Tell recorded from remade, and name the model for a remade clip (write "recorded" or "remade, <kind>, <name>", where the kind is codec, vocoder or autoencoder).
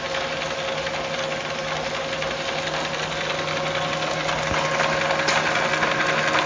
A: recorded